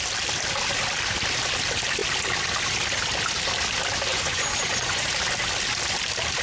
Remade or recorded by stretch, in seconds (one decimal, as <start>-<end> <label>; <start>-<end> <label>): 0.0-4.1 recorded; 4.1-5.1 remade; 5.1-6.4 recorded